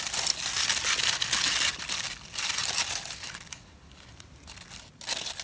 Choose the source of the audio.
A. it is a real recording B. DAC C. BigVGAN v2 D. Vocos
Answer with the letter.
A